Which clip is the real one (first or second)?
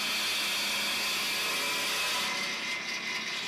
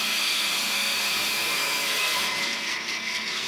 first